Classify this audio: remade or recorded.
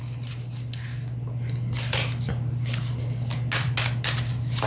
recorded